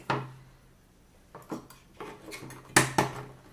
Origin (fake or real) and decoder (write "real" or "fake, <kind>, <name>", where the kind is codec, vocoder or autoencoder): real